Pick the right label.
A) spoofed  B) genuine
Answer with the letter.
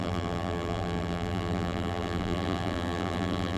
A